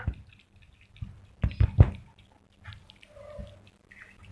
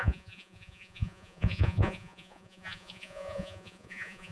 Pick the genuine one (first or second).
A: first